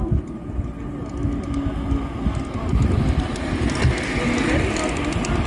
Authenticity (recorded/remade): recorded